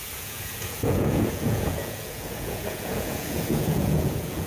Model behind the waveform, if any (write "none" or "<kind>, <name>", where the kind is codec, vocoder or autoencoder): vocoder, Vocos